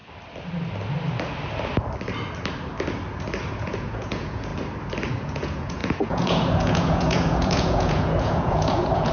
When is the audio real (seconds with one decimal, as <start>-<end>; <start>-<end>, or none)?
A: 0.0-3.5; 4.5-5.1